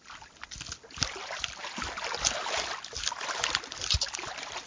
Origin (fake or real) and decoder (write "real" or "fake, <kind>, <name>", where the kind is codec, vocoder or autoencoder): real